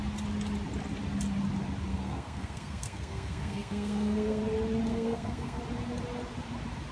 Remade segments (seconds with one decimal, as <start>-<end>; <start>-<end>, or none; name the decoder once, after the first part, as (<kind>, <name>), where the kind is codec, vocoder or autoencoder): 1.9-4.4 (codec, SNAC); 4.9-5.6

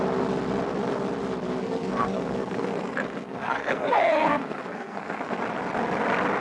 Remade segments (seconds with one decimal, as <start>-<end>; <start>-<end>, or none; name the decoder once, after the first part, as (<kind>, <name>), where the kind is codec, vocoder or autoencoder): 1.6-5.4 (codec, SNAC)

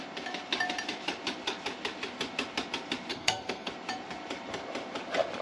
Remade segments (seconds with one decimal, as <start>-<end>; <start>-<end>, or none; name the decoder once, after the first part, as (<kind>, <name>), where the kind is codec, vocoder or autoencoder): 3.1-3.7 (codec, SNAC)

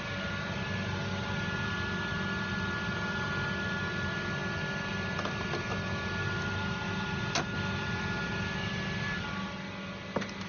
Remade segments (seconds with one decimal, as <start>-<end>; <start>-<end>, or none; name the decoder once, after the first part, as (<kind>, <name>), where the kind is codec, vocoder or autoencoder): none

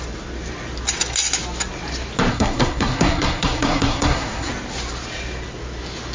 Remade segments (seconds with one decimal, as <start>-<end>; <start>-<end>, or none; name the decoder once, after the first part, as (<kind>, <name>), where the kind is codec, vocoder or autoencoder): 2.3-4.5 (codec, SNAC)

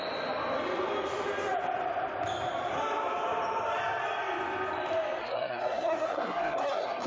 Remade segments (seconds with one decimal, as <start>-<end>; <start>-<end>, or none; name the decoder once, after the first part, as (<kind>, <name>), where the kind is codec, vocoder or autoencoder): 5.2-7.1 (codec, SNAC)

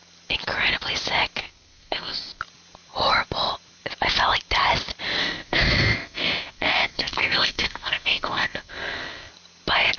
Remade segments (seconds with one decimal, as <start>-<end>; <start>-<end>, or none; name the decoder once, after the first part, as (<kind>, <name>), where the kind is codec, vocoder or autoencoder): 1.4-2.4 (codec, SNAC); 5.2-9.3

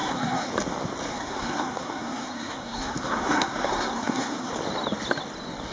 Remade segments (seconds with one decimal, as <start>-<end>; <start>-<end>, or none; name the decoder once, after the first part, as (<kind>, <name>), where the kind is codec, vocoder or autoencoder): 0.0-0.5 (codec, SNAC); 1.1-4.5